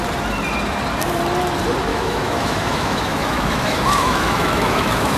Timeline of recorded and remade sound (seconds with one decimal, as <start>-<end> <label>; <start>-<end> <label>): 0.0-1.9 recorded; 1.9-5.2 remade